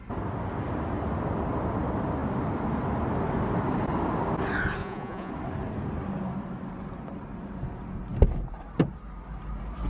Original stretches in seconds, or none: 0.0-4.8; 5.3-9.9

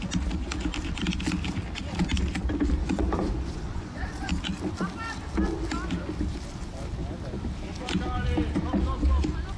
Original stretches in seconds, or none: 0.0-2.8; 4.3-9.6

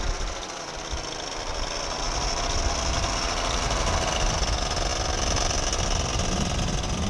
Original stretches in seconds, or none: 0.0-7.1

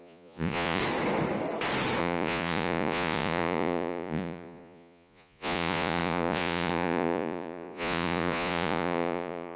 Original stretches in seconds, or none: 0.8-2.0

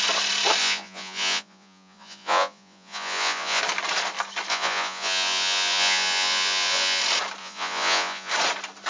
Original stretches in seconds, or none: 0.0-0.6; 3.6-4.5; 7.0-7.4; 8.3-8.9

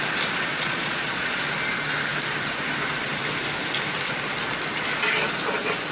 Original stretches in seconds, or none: 0.0-0.5; 1.4-5.9